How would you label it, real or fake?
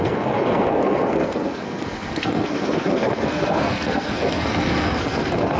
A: fake